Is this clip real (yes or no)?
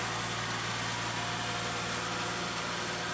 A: yes